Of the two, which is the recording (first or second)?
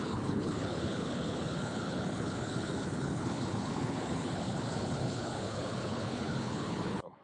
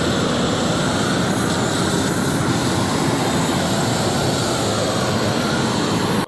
second